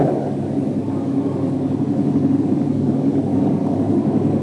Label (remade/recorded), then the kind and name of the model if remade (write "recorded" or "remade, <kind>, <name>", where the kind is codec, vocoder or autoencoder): remade, codec, DAC